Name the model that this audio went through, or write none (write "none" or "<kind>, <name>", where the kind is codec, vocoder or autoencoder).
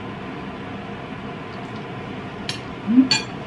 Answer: none